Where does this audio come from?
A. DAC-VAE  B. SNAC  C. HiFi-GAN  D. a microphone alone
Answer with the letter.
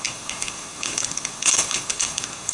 B